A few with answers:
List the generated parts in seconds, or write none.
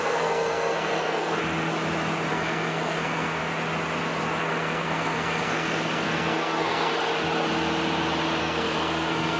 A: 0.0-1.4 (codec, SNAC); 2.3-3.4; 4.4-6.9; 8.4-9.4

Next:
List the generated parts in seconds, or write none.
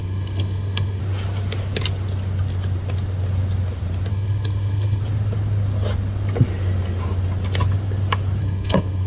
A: 0.0-1.0 (codec, SNAC); 4.1-5.0; 8.4-9.1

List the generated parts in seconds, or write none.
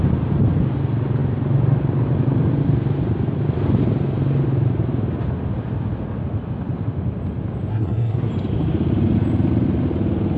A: 7.7-8.3 (codec, SNAC)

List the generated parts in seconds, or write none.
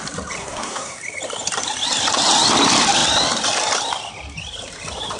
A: 0.4-1.0 (codec, SNAC)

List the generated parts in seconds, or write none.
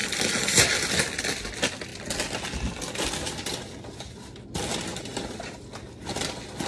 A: none